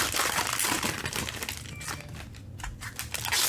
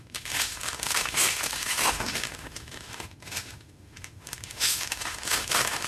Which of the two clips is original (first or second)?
first